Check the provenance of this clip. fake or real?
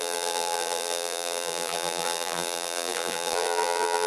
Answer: fake